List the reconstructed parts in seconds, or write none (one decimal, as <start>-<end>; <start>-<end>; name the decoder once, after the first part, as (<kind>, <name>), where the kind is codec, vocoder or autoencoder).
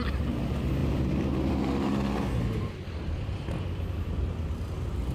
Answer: none